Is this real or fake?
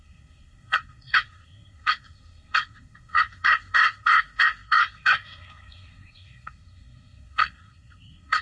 fake